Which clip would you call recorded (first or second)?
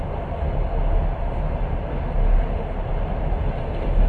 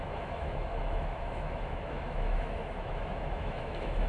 first